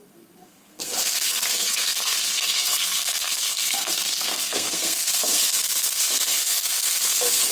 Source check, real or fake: fake